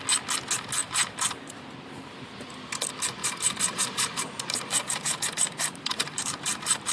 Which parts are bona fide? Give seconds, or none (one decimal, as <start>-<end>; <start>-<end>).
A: 0.0-0.8; 2.5-3.2